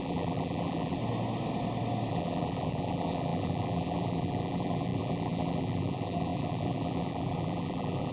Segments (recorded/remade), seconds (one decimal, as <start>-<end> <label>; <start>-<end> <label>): 0.0-1.0 remade; 1.0-2.1 recorded; 2.1-8.1 remade